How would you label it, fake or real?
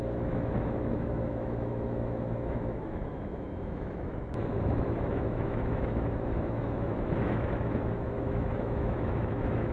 fake